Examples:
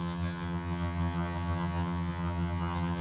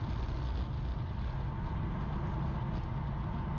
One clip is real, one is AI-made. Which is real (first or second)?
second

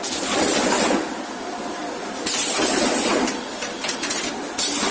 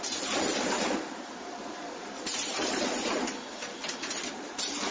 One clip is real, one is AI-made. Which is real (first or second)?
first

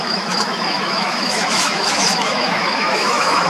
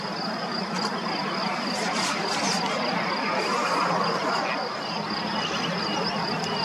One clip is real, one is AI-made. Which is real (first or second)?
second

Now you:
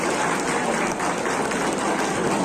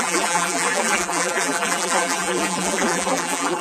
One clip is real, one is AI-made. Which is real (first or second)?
first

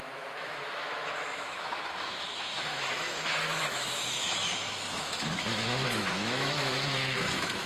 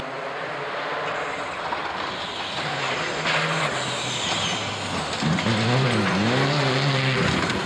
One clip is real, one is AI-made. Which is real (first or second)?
second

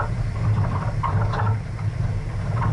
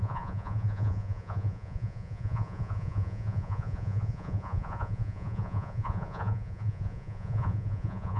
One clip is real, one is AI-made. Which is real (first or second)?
first